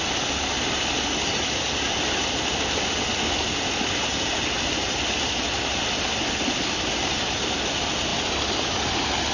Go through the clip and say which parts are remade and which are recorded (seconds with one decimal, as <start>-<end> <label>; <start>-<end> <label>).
0.0-9.3 recorded